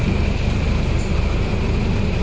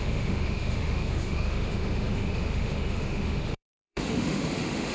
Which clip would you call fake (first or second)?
second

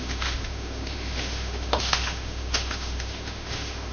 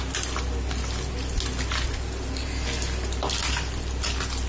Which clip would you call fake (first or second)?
first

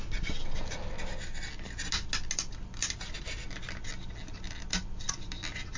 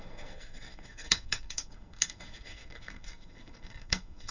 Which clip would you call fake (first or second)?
second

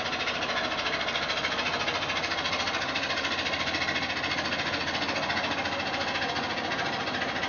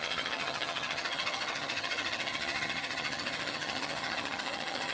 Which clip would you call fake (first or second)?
second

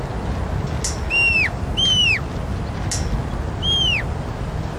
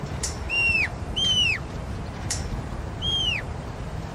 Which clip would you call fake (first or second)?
second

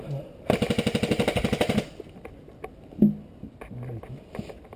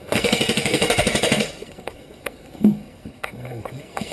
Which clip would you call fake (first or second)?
second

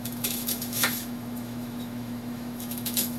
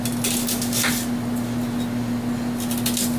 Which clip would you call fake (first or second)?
first